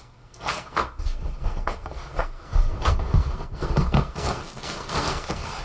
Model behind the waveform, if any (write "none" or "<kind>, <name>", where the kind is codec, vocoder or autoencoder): codec, SNAC